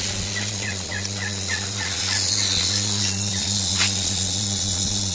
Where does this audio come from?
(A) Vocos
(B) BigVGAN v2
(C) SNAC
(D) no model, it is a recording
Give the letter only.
A